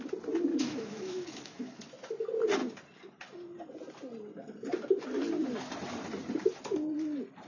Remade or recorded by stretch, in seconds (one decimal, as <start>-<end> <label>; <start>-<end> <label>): 0.0-0.5 recorded; 0.5-1.8 remade; 1.8-7.5 recorded